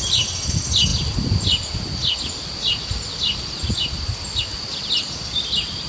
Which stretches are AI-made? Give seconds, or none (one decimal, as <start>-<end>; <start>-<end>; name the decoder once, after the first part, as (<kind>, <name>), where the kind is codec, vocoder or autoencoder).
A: none